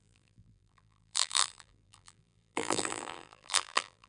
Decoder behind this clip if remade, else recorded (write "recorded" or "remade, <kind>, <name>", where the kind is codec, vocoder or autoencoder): remade, vocoder, BigVGAN v2